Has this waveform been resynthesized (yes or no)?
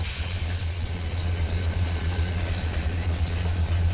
yes